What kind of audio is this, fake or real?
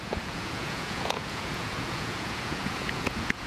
fake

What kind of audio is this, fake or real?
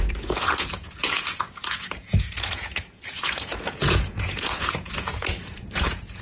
fake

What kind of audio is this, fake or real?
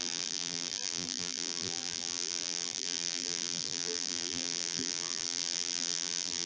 fake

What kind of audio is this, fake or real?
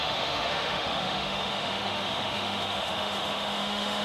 fake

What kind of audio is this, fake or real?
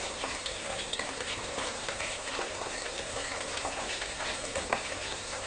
fake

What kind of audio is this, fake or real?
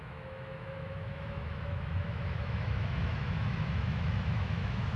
fake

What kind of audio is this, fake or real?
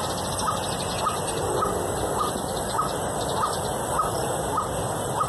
real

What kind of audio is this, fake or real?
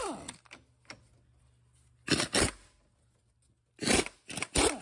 real